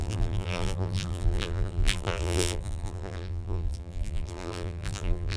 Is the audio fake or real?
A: fake